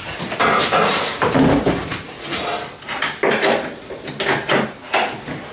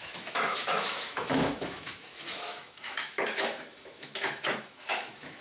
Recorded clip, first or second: first